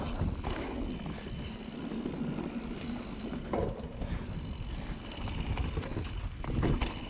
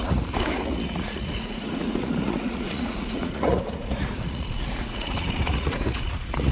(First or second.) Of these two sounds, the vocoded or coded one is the second